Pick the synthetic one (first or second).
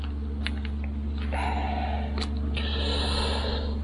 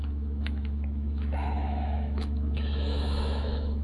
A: second